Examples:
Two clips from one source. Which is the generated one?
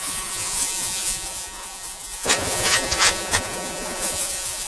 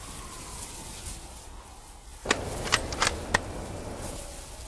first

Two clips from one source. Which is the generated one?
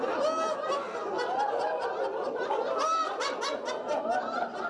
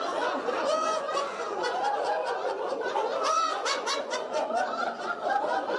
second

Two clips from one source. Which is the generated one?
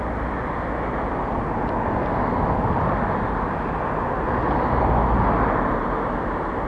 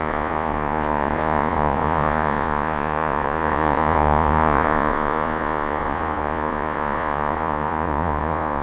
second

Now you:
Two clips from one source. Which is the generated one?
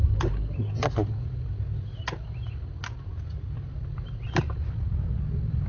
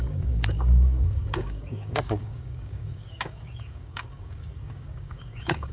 second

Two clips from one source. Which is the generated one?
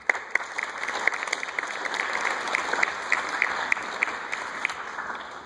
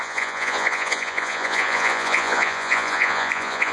second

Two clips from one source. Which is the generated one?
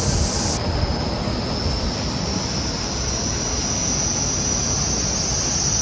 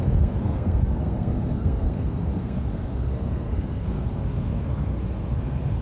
second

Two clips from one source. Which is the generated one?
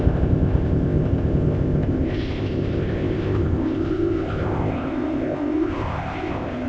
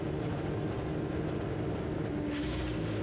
first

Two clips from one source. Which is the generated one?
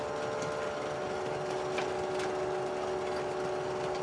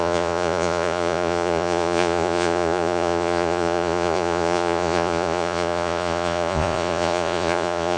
second